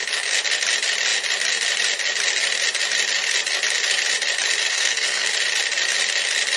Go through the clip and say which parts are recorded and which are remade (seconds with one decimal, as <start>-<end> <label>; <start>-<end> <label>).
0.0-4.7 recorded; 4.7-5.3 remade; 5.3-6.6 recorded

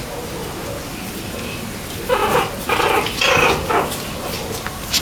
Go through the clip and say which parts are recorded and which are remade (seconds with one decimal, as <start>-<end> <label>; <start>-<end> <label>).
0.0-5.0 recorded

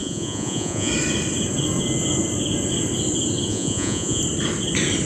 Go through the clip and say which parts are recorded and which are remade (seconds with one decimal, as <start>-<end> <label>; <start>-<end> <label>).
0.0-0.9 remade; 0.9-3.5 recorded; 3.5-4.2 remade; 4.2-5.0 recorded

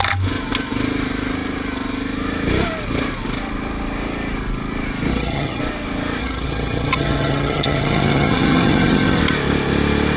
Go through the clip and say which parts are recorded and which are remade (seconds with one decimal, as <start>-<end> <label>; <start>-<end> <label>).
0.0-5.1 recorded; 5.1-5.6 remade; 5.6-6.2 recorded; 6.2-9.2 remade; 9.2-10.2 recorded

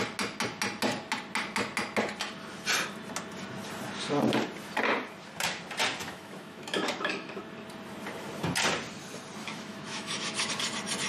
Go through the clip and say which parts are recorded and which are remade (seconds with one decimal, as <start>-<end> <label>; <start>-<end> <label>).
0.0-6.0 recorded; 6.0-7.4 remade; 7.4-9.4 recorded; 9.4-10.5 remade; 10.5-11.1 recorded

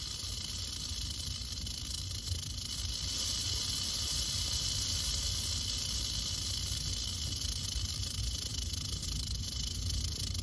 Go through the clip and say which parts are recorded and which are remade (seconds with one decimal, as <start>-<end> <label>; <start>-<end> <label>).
0.0-10.4 recorded

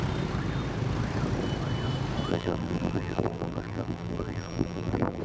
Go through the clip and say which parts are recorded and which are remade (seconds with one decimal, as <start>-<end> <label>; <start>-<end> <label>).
0.0-2.3 recorded; 2.3-5.2 remade